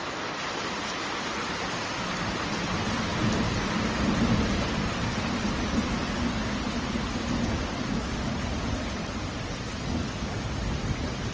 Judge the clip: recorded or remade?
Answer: recorded